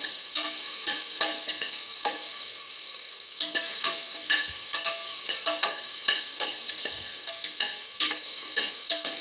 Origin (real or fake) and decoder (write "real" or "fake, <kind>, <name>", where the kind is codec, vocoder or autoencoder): fake, codec, SNAC